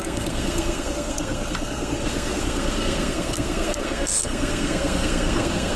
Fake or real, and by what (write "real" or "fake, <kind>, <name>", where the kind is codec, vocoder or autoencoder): fake, codec, SNAC